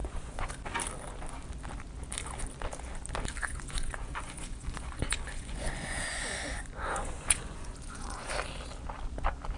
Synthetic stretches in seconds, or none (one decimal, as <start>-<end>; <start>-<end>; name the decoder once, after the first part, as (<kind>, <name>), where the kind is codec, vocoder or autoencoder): 0.0-0.5 (vocoder, Vocos); 3.4-8.3